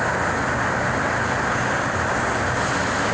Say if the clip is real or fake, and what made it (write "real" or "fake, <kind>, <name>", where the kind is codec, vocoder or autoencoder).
real